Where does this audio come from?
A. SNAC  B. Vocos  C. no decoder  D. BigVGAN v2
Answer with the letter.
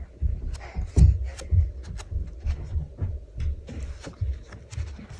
C